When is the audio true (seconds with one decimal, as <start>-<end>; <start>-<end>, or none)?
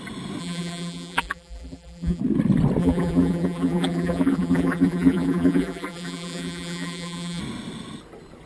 0.0-0.4; 2.2-2.8; 7.4-8.5